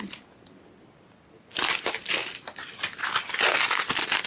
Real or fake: real